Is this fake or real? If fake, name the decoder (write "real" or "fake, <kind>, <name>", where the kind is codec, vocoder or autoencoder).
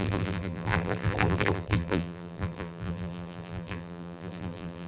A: fake, vocoder, BigVGAN v2